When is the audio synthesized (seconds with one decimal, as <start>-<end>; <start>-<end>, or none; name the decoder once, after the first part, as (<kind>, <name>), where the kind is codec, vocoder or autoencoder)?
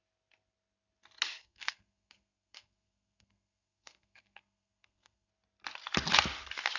1.4-5.3 (codec, SNAC)